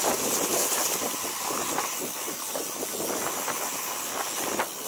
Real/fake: real